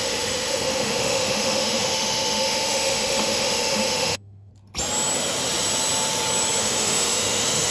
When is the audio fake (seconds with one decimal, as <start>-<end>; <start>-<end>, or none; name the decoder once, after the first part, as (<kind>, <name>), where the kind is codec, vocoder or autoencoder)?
0.0-4.5 (autoencoder, DAC-VAE); 6.6-7.7